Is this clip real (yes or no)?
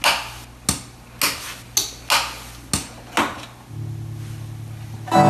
yes